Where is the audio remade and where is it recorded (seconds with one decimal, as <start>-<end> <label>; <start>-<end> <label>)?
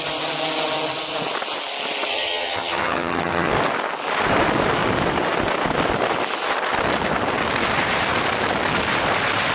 0.0-2.1 recorded; 2.1-3.5 remade; 3.5-9.5 recorded